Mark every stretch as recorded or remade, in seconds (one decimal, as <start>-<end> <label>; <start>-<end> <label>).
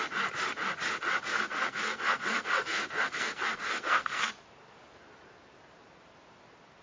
0.0-1.3 recorded; 1.3-4.3 remade; 4.3-6.8 recorded